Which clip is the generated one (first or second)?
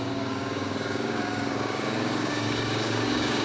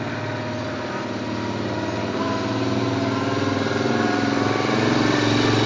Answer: first